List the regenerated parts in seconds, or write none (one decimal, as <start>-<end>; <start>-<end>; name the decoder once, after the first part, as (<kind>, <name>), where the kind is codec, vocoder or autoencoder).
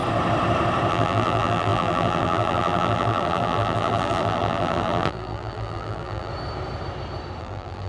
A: 0.9-6.3 (vocoder, BigVGAN v2); 7.4-7.9